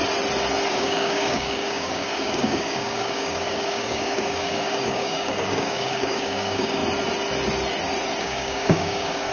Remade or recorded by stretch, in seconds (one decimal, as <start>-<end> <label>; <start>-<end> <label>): 0.0-0.7 recorded; 0.7-6.8 remade; 6.8-8.2 recorded; 8.2-9.3 remade